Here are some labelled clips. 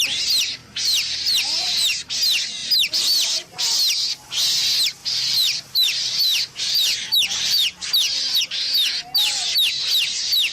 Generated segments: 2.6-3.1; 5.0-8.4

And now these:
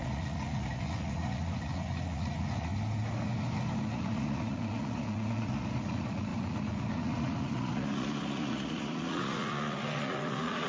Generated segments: 0.0-2.7; 3.9-10.7

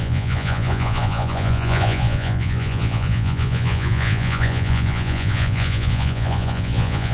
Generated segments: 0.0-7.1

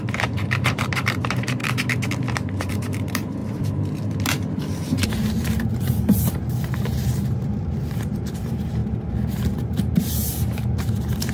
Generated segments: 0.0-1.6; 2.7-8.8; 9.6-11.3